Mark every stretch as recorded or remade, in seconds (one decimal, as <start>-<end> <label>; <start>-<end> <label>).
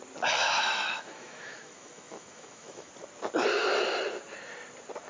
0.0-0.4 recorded; 0.4-2.9 remade; 2.9-5.1 recorded